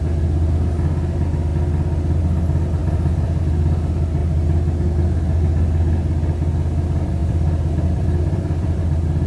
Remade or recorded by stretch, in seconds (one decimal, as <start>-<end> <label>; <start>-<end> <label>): 0.0-2.8 recorded; 2.8-3.4 remade; 3.4-7.2 recorded; 7.2-8.8 remade; 8.8-9.3 recorded